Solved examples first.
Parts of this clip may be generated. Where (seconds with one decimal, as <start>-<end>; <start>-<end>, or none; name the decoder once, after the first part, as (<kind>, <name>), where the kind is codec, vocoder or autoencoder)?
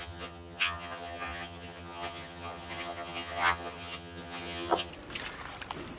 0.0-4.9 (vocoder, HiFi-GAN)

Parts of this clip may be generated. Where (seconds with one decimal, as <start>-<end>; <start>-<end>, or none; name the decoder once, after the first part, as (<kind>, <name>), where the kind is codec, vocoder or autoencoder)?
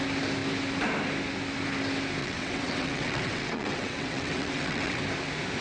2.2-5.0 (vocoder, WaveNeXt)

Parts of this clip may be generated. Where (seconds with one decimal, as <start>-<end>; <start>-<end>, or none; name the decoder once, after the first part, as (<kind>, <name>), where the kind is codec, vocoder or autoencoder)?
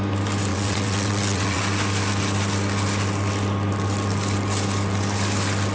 0.5-1.6 (vocoder, WaveNeXt)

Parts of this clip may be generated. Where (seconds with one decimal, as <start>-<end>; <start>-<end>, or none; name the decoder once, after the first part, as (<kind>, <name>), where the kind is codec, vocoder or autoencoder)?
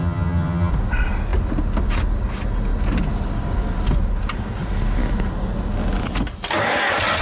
0.0-0.7 (vocoder, HiFi-GAN)